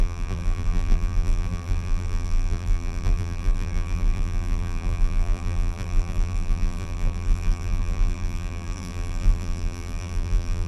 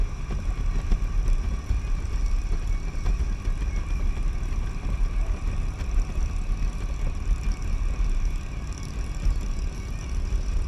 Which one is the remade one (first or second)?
first